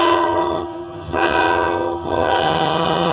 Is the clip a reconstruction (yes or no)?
yes